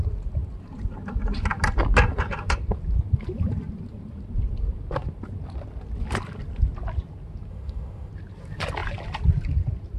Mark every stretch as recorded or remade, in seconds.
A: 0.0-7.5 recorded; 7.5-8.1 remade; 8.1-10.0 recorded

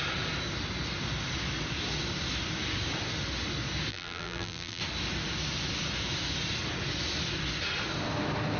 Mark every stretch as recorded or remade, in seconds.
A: 0.0-3.9 recorded; 3.9-4.8 remade; 4.8-8.6 recorded

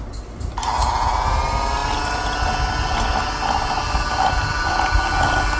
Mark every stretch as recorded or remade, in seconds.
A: 0.0-5.6 recorded

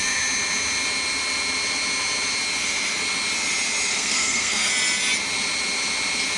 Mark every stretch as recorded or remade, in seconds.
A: 0.0-3.9 recorded; 3.9-4.7 remade; 4.7-6.4 recorded

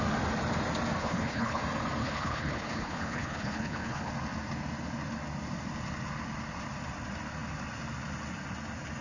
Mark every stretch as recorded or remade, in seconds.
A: 0.0-1.0 recorded; 1.0-1.6 remade; 1.6-2.0 recorded; 2.0-4.1 remade; 4.1-9.0 recorded

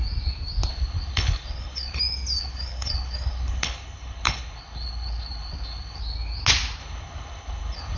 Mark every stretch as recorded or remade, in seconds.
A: 0.0-0.7 recorded; 0.7-2.0 remade; 2.0-2.4 recorded; 2.4-6.0 remade; 6.0-6.8 recorded; 6.8-8.0 remade

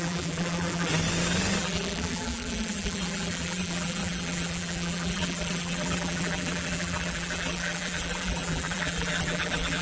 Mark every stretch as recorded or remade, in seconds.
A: 0.0-0.9 remade; 0.9-1.6 recorded; 1.6-9.8 remade